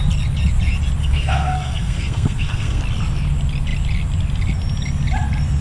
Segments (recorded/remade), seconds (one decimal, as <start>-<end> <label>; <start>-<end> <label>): 0.0-1.0 recorded; 1.0-2.8 remade; 2.8-5.6 recorded